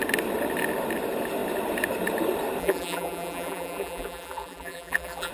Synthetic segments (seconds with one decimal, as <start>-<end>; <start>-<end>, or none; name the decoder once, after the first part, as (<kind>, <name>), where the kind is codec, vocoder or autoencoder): 2.6-5.3 (vocoder, BigVGAN v2)